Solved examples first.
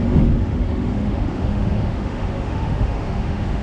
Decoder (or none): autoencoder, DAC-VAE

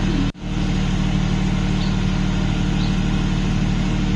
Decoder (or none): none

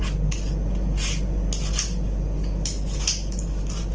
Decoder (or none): none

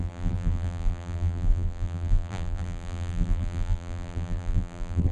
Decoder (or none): vocoder, BigVGAN v2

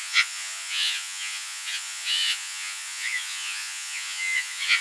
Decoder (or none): vocoder, Vocos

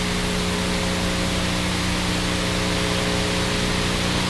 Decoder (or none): none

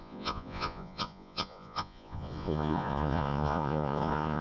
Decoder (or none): vocoder, Vocos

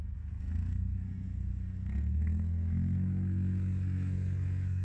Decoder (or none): codec, SNAC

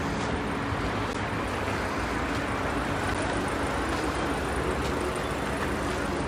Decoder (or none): none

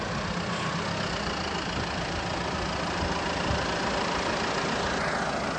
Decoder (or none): none